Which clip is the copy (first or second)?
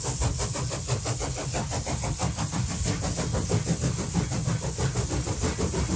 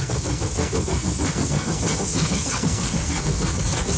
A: second